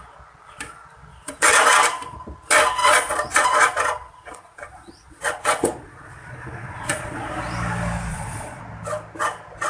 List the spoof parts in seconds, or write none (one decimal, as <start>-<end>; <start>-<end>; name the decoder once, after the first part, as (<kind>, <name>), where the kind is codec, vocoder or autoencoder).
1.1-1.6 (vocoder, Vocos); 2.8-7.3; 8.1-8.6